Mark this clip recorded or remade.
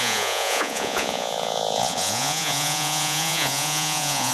remade